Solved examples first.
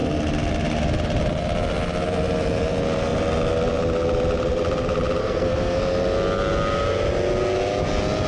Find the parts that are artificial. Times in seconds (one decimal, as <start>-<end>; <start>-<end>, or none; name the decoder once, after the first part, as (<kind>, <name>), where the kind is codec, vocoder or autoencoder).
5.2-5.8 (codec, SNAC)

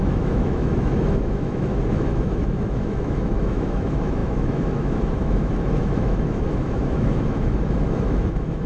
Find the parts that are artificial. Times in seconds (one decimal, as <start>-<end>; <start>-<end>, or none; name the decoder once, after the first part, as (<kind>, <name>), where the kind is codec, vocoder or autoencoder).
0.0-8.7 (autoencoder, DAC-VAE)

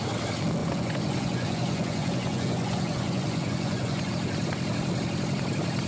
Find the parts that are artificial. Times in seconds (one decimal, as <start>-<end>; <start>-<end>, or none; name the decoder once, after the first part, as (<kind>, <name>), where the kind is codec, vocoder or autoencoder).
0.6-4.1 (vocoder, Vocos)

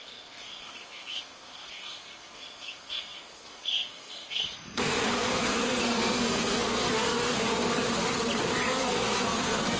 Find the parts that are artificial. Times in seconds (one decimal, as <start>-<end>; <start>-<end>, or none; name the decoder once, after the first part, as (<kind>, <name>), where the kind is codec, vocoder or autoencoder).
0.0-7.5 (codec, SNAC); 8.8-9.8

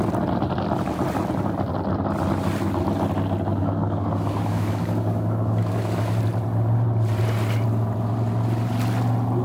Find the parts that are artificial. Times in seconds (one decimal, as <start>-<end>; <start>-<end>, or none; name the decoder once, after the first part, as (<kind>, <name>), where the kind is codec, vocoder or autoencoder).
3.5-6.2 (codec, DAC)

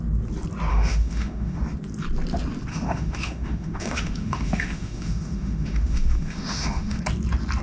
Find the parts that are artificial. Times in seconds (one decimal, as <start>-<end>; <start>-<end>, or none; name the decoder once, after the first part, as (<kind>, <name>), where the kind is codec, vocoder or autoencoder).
0.7-1.6 (autoencoder, DAC-VAE); 2.7-7.0

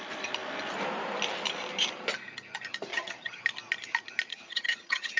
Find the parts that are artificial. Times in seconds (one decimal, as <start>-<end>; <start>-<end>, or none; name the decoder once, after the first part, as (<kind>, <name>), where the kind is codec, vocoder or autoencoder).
2.9-3.4 (vocoder, HiFi-GAN); 4.3-5.2